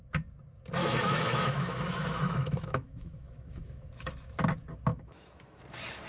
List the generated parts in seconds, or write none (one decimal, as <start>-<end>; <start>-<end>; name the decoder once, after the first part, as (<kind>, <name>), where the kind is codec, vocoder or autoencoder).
0.8-4.1 (autoencoder, DAC-VAE); 4.9-5.6